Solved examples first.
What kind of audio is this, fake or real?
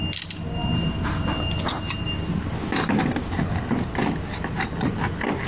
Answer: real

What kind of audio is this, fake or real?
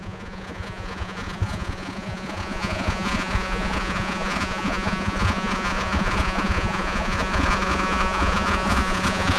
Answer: fake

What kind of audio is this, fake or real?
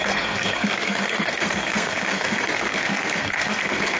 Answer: fake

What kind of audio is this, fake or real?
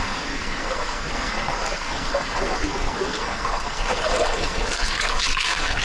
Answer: fake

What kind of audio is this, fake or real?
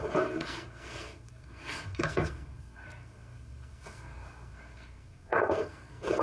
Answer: fake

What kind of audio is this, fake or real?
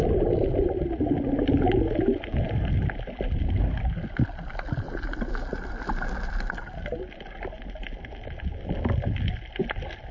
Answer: real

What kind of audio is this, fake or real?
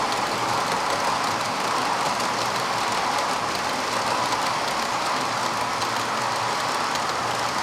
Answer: real